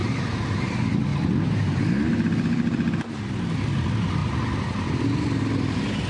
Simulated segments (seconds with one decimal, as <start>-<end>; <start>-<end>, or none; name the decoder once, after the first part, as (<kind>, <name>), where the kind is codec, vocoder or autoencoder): none